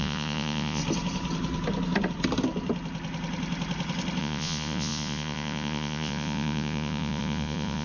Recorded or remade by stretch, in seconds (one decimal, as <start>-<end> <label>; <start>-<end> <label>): 0.0-0.8 remade; 0.8-4.2 recorded; 4.2-7.8 remade